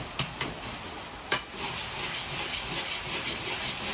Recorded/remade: recorded